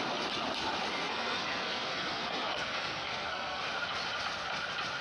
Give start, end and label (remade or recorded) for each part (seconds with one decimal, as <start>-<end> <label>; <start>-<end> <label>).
0.0-0.9 recorded; 0.9-3.6 remade; 3.6-5.0 recorded